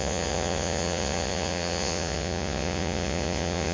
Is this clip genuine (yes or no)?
no